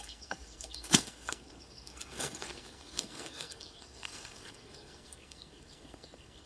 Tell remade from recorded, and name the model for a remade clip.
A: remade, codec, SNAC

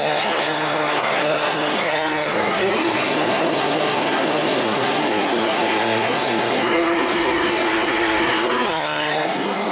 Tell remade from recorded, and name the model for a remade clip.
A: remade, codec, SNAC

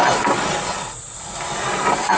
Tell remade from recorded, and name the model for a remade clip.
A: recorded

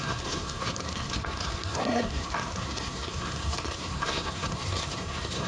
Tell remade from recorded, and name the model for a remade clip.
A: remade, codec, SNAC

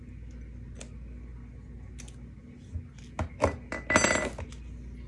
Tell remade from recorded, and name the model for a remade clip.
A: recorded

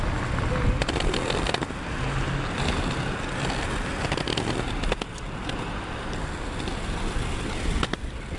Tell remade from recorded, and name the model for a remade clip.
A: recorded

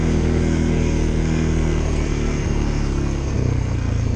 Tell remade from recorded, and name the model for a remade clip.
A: remade, codec, SNAC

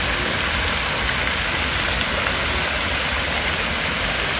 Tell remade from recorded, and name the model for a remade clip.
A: recorded